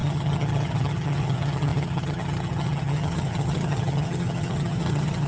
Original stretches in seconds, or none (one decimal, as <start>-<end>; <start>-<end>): none